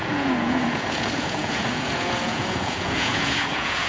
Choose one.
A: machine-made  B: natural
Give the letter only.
A